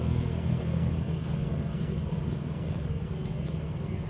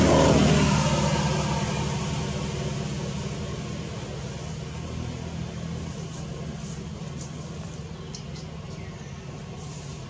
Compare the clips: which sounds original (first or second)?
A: second